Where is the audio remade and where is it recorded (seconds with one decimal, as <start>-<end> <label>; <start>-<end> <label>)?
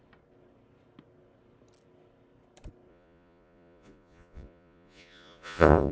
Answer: 0.0-2.9 recorded; 2.9-5.9 remade